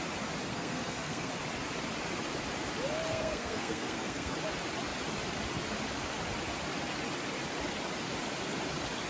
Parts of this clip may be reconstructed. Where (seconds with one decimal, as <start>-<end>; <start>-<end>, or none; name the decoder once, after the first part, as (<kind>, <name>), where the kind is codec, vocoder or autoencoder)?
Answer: 0.5-1.3 (codec, SNAC); 3.1-4.3